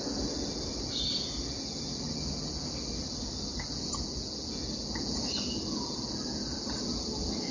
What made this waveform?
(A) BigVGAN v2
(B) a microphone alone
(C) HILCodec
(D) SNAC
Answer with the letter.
B